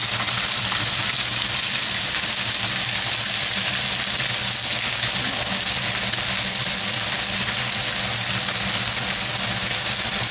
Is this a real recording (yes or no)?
yes